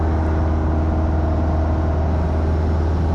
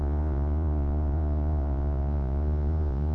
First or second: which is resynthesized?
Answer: second